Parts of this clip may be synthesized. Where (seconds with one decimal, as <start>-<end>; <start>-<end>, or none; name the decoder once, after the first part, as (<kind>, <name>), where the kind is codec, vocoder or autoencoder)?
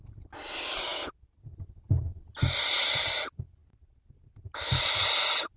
none